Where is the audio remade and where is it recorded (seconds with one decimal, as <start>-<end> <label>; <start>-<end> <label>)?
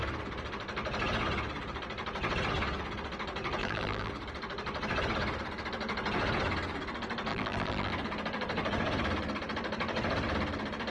0.0-3.6 recorded; 3.6-4.1 remade; 4.1-7.3 recorded; 7.3-7.9 remade; 7.9-10.9 recorded